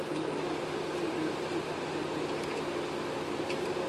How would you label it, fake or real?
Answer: real